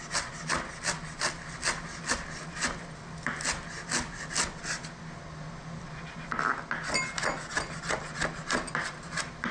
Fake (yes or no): no